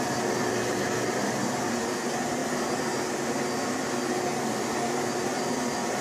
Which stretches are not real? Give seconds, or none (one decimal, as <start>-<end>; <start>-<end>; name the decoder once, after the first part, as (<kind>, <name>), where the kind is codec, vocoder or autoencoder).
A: none